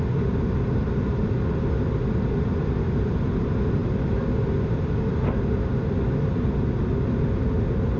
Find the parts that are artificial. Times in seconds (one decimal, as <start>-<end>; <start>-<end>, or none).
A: none